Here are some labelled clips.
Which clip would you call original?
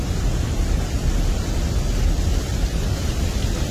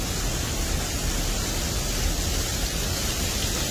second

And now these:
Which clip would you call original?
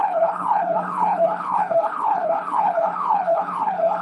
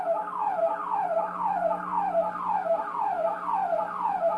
second